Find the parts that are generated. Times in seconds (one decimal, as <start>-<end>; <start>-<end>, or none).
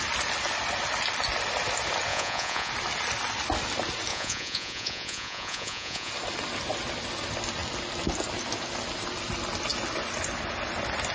2.1-2.7; 4.1-6.1